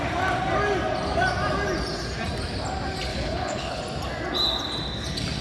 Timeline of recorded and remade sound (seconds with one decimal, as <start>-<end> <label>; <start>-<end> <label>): 0.0-3.1 recorded; 3.1-3.8 remade; 3.8-5.4 recorded